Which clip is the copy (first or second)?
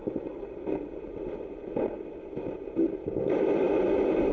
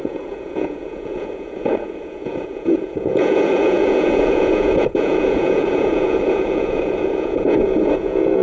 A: second